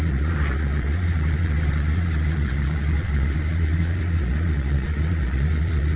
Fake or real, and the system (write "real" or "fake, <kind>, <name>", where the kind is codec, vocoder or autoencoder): fake, vocoder, Vocos